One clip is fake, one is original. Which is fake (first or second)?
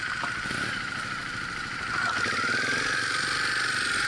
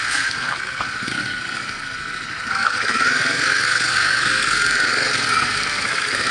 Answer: second